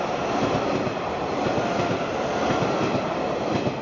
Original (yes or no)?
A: yes